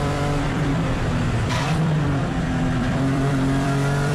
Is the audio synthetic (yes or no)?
yes